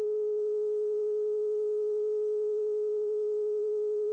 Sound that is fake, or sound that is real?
real